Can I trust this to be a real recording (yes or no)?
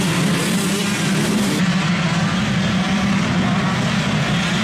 yes